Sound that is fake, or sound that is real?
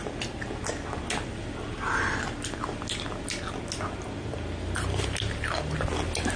real